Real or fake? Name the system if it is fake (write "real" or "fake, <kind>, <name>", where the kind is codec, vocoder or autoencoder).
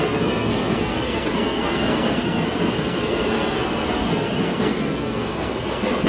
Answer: fake, codec, SNAC